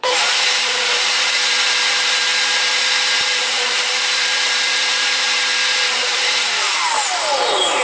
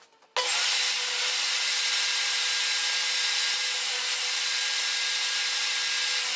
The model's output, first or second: first